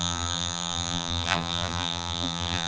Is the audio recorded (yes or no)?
no